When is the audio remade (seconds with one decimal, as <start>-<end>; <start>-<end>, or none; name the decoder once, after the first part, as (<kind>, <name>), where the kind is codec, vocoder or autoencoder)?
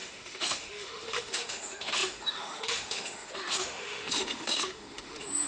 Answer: 0.0-5.5 (autoencoder, DAC-VAE)